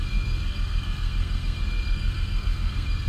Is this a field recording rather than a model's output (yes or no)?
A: no